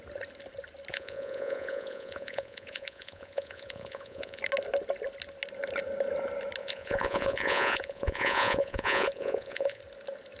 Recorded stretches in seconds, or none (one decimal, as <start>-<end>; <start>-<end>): 0.0-0.9; 4.4-6.6; 9.8-10.4